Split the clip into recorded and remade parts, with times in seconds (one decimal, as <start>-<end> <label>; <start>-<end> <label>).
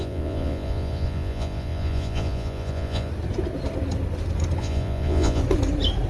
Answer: 0.0-3.1 remade; 3.1-4.6 recorded; 4.6-5.4 remade; 5.4-6.1 recorded